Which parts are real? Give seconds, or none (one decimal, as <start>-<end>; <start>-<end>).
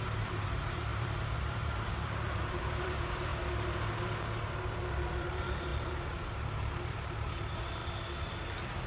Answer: 3.3-5.2; 7.8-8.4